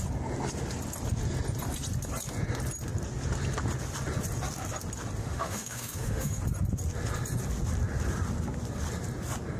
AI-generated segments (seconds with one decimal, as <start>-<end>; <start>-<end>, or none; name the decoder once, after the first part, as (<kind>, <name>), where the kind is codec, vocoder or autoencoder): 5.2-6.4 (autoencoder, DAC-VAE)